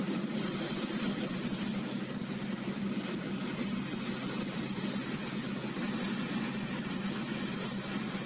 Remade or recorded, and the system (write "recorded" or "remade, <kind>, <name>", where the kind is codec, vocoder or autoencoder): recorded